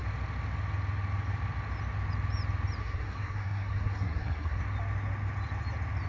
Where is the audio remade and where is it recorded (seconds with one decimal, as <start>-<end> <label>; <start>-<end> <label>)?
0.0-2.8 recorded; 2.8-4.6 remade; 4.6-6.1 recorded